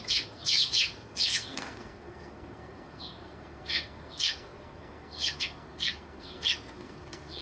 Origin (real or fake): fake